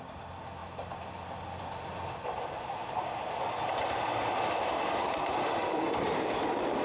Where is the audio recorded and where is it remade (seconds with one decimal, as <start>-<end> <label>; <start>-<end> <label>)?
0.0-6.8 recorded